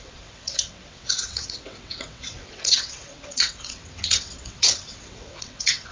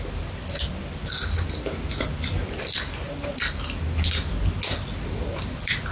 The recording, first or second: second